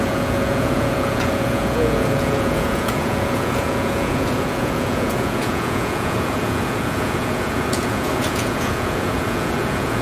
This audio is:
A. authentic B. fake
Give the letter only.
B